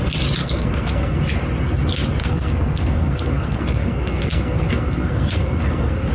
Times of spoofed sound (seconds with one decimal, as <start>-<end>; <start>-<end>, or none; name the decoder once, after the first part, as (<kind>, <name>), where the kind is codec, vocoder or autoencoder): 0.4-1.2 (codec, SNAC); 2.2-6.1